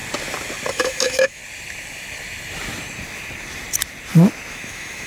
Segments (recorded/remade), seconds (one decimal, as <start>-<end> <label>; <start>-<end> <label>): 0.0-0.7 recorded; 0.7-1.4 remade; 1.4-4.5 recorded; 4.5-5.1 remade

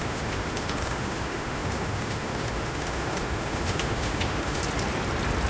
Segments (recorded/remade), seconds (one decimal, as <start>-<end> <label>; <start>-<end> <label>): 0.0-4.6 remade; 4.6-5.5 recorded

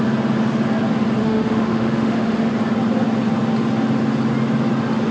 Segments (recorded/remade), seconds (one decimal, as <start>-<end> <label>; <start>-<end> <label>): 0.0-1.2 recorded; 1.2-2.5 remade; 2.5-5.1 recorded

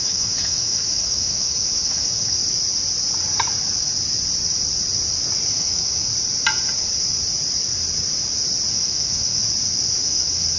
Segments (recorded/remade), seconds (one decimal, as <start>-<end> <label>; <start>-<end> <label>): 0.0-2.4 remade; 2.4-5.5 recorded; 5.5-6.1 remade; 6.1-8.7 recorded; 8.7-9.4 remade; 9.4-10.0 recorded; 10.0-10.6 remade

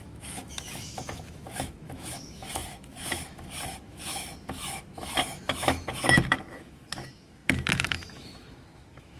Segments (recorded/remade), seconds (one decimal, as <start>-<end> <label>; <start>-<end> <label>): 0.0-9.2 remade

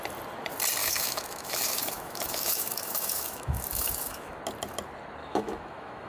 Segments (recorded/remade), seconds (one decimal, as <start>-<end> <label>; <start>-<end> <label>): 0.0-0.8 recorded; 0.8-4.4 remade; 4.4-5.2 recorded; 5.2-6.1 remade